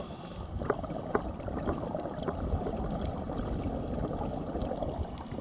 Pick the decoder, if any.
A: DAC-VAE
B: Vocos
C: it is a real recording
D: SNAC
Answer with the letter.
C